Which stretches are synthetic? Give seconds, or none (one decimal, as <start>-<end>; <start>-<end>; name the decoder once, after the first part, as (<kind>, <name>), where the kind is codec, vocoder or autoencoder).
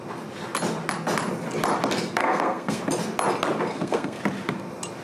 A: 2.2-2.8 (codec, SNAC); 3.7-4.2